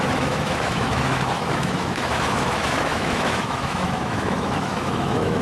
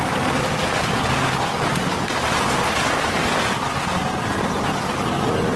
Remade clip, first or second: first